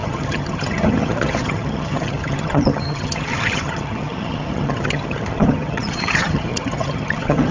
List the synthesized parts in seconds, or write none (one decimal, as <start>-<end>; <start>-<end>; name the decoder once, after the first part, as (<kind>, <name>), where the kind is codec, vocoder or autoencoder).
0.0-7.5 (vocoder, HiFi-GAN)